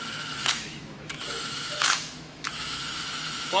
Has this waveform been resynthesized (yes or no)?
yes